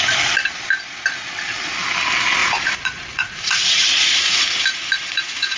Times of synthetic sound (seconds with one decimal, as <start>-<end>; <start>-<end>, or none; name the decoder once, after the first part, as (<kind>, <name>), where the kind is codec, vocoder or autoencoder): 2.4-5.6 (vocoder, Vocos)